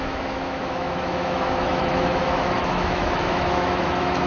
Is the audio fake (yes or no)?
yes